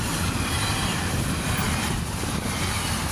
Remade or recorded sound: recorded